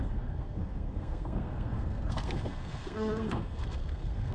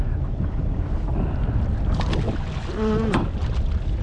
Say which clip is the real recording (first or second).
second